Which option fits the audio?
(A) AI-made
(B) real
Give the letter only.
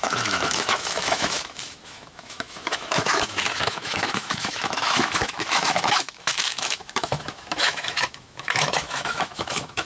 A